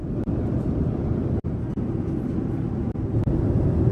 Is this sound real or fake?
real